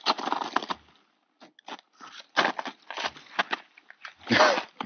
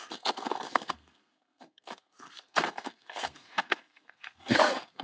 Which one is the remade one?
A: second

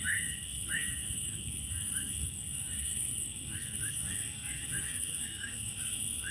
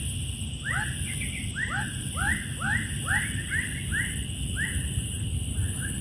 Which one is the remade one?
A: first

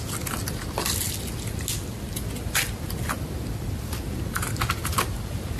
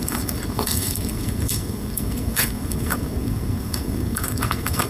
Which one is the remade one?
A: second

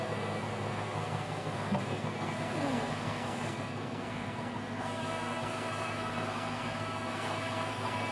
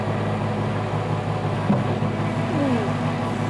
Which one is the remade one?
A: first